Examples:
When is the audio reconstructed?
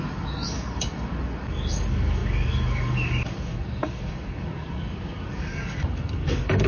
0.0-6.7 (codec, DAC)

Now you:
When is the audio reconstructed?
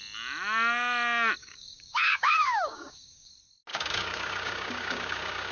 1.4-3.3 (codec, DAC); 3.7-5.5